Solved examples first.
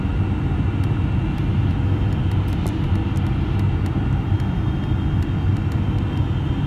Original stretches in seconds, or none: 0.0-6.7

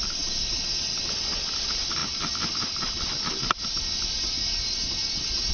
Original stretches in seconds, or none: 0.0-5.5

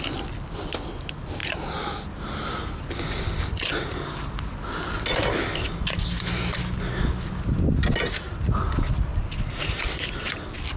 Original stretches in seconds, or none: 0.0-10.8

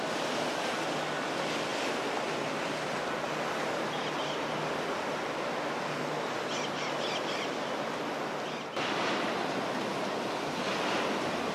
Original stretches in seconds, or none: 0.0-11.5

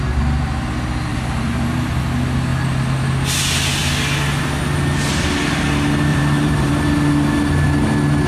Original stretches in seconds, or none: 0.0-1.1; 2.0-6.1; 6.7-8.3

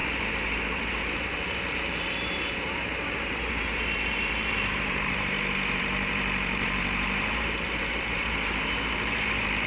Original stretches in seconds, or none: none